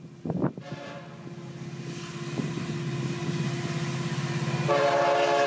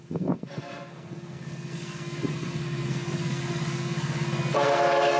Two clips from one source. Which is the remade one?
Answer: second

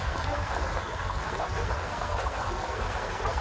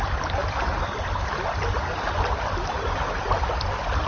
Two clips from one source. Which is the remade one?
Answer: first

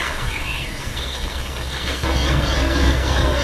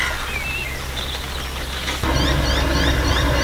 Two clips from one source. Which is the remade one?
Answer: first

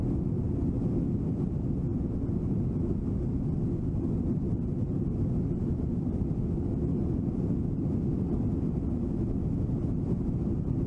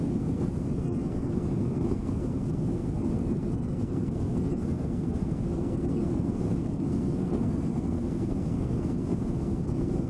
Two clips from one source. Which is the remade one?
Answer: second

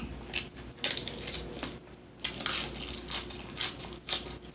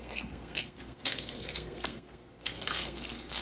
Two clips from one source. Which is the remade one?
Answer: second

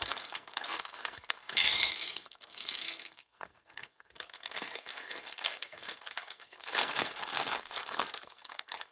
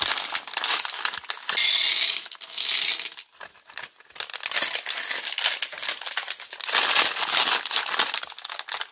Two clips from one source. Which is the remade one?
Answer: first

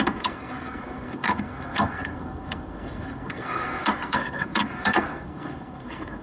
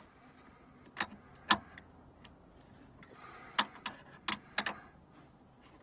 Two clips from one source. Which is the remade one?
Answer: first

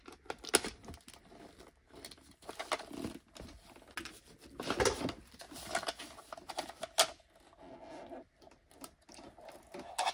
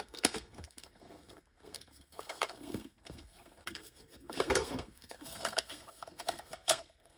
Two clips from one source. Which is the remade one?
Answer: second